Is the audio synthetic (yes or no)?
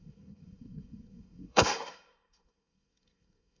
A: yes